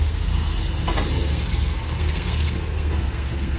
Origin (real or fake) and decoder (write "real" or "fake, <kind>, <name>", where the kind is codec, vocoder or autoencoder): fake, codec, SNAC